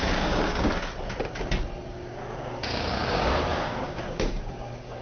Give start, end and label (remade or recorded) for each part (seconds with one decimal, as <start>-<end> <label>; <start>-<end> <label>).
0.0-0.7 remade; 0.7-1.9 recorded; 1.9-5.0 remade